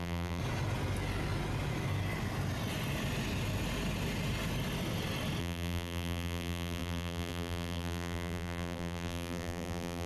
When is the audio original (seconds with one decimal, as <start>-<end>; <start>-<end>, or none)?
0.4-5.4